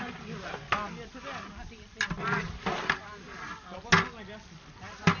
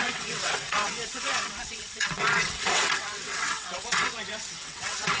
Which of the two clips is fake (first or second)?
second